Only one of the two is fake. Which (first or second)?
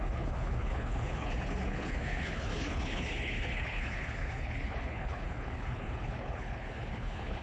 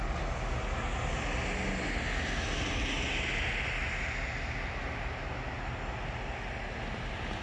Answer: first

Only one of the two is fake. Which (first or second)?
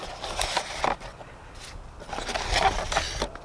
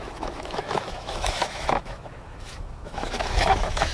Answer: second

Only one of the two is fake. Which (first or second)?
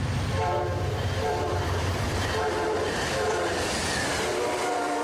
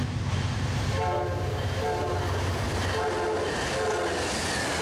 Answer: first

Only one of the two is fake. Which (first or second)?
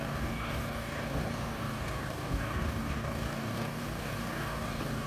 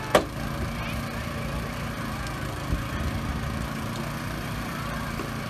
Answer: first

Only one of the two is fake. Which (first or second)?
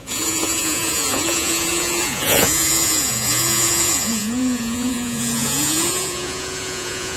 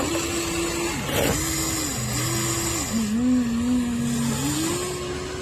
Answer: first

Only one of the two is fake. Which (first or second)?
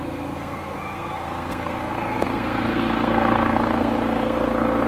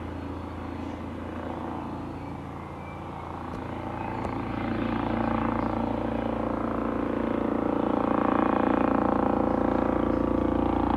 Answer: first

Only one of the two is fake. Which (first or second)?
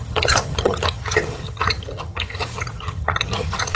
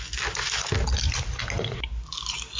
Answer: first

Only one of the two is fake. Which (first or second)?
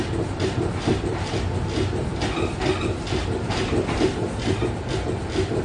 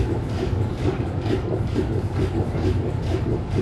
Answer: second